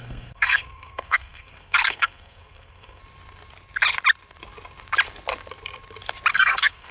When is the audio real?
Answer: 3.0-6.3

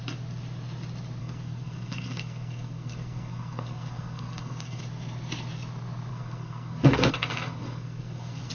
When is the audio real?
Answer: 0.0-1.2; 4.8-6.1

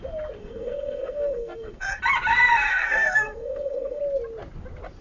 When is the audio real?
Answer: 0.0-0.4; 2.0-2.7; 4.0-5.0

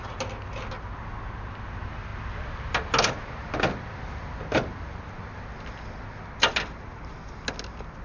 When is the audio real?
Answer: 0.0-8.0

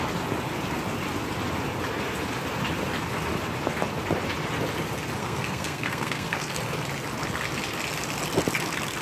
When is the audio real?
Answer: 0.0-5.2; 6.6-9.0

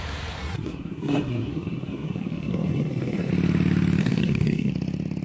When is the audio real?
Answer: 0.0-0.4; 3.3-4.0; 4.7-5.2

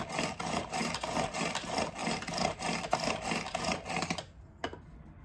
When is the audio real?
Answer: 0.0-5.2

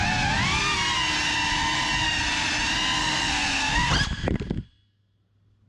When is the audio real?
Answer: 0.0-3.0; 3.9-5.7